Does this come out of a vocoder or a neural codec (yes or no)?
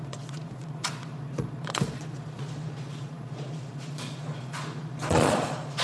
yes